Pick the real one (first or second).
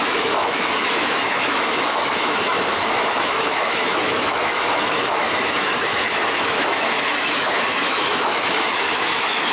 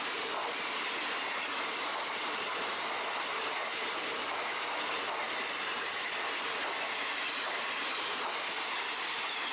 second